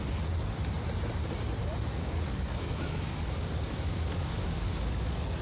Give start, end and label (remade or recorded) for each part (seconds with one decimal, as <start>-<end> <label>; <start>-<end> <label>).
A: 0.0-1.9 recorded; 1.9-5.4 remade